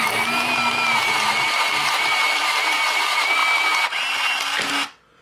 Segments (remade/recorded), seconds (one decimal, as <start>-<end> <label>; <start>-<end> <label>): 0.0-5.2 recorded